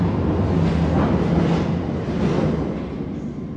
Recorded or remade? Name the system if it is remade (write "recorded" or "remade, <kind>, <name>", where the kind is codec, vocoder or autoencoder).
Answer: recorded